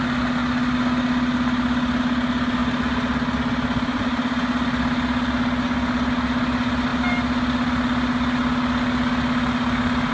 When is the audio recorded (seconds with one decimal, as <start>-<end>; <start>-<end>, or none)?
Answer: 0.0-10.1